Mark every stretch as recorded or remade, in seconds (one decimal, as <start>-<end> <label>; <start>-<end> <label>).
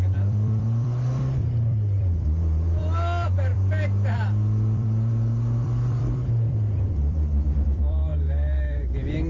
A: 0.0-8.1 remade; 8.1-9.3 recorded